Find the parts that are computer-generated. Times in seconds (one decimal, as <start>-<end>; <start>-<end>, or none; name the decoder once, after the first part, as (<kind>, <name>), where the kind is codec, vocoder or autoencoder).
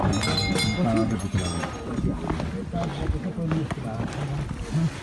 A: 1.0-2.2 (vocoder, BigVGAN v2)